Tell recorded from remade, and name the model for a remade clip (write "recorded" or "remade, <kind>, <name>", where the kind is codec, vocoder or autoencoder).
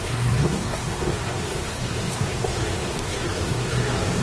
remade, codec, SNAC